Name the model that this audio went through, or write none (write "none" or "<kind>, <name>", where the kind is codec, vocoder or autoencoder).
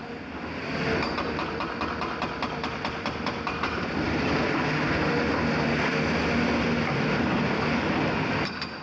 none